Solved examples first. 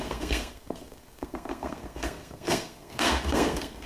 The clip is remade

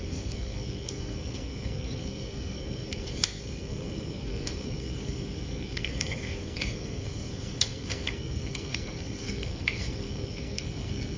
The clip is remade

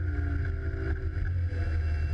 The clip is recorded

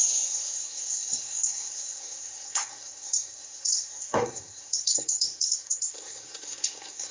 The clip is remade